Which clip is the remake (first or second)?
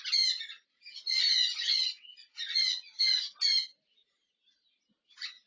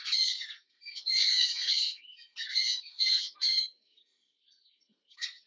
second